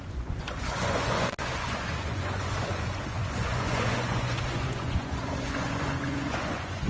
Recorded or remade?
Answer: remade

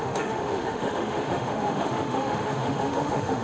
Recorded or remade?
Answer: remade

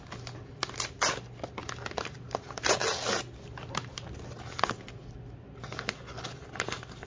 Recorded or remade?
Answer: recorded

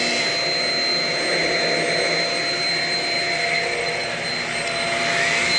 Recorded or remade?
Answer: recorded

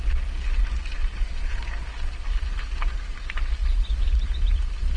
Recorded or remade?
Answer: recorded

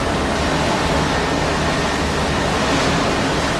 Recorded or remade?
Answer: recorded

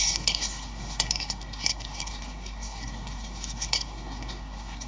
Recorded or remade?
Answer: remade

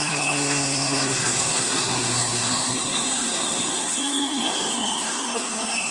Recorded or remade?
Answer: remade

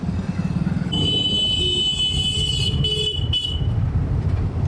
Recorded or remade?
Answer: recorded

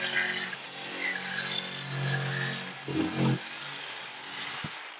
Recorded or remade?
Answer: recorded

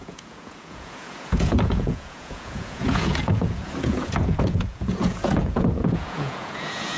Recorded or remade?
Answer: remade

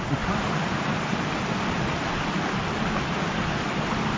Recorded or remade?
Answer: recorded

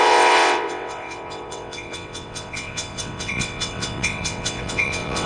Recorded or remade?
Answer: remade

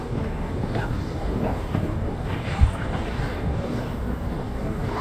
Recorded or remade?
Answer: remade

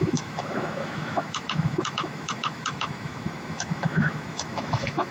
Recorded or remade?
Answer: remade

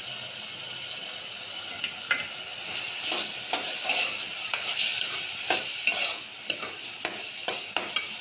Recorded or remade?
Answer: recorded